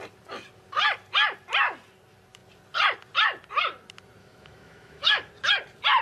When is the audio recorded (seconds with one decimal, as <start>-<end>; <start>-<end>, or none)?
0.0-4.2; 5.3-6.0